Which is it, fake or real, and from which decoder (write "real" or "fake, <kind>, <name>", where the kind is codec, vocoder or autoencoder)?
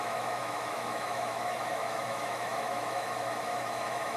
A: fake, autoencoder, DAC-VAE